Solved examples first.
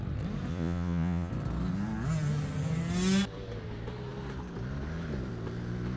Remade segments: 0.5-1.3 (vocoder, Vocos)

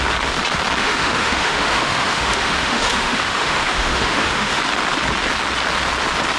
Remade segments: 0.8-4.6 (autoencoder, DAC-VAE)